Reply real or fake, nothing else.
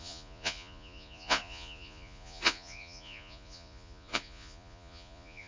fake